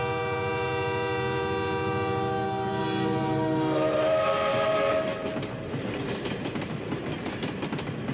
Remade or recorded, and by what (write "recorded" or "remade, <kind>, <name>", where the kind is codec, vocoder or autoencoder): recorded